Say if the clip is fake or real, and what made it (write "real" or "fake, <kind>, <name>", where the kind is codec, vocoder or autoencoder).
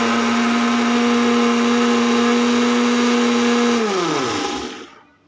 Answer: real